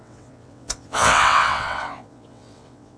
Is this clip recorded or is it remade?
remade